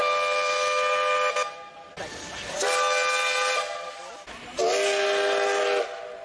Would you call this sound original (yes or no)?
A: yes